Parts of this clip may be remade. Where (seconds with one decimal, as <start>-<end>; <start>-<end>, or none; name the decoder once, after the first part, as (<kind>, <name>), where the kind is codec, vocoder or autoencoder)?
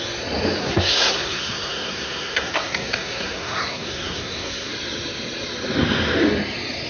0.6-4.7 (codec, SNAC)